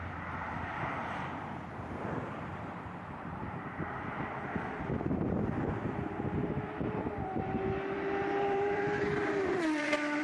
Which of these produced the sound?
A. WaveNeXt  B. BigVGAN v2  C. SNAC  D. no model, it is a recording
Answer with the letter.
B